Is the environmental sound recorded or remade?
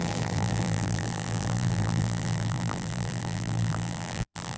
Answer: remade